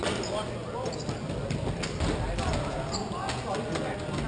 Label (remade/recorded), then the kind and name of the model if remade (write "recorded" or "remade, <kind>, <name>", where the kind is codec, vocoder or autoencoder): recorded